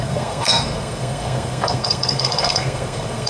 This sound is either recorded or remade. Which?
remade